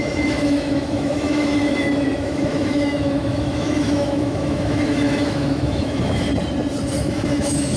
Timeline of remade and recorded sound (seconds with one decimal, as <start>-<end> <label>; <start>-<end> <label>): 0.0-6.3 remade; 6.3-7.0 recorded; 7.0-7.8 remade